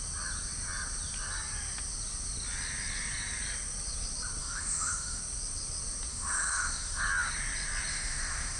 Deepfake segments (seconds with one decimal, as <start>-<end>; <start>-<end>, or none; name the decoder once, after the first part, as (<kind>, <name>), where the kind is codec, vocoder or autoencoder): 4.4-5.2 (autoencoder, DAC-VAE); 6.1-7.0; 7.9-8.6